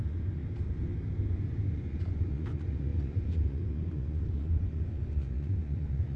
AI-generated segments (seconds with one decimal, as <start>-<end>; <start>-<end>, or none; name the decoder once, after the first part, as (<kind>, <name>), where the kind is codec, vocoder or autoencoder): 0.0-0.4 (vocoder, Vocos); 1.3-6.2